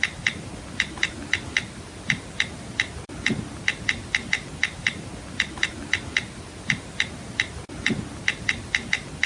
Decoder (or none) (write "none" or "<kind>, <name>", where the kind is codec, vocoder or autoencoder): none